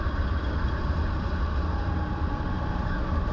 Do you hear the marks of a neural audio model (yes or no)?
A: no